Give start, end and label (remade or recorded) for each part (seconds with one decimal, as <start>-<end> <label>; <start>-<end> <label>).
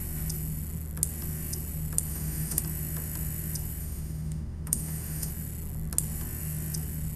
0.0-2.1 recorded; 2.1-2.6 remade; 2.6-3.8 recorded; 3.8-5.3 remade; 5.3-7.2 recorded